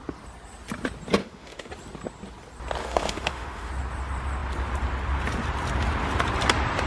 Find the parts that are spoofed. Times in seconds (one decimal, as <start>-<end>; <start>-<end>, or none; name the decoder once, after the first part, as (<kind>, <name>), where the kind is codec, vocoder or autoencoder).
1.2-1.7 (autoencoder, DAC-VAE); 2.8-3.7